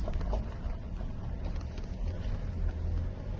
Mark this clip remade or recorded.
recorded